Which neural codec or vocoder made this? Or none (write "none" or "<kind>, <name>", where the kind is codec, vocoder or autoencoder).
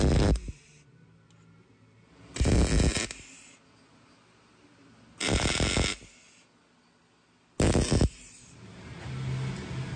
none